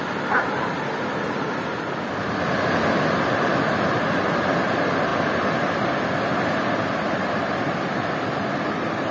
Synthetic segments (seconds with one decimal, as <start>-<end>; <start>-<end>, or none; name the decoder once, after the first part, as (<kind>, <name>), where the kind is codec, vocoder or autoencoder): none